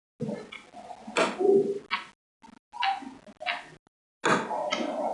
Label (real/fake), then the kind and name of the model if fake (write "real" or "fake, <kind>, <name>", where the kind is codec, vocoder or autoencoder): real